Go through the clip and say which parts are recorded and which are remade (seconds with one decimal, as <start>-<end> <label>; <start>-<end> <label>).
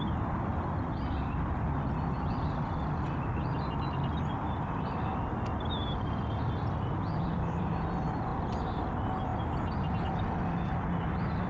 0.0-0.5 recorded; 0.5-2.8 remade; 2.8-8.3 recorded; 8.3-8.8 remade; 8.8-11.5 recorded